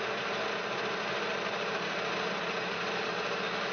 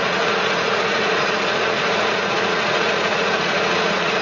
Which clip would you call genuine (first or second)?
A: first